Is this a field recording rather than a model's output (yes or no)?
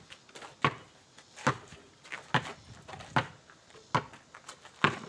yes